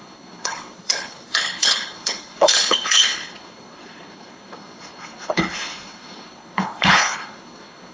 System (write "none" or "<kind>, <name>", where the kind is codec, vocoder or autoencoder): codec, HILCodec